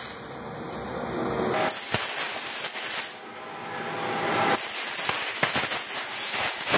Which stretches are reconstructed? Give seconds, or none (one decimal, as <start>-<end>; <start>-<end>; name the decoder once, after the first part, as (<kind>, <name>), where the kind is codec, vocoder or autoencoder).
0.0-1.2 (vocoder, BigVGAN v2); 5.3-6.8